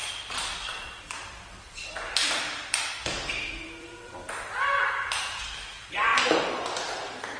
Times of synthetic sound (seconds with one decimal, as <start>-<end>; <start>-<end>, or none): 1.0-7.4